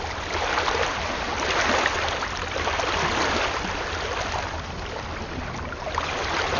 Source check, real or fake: real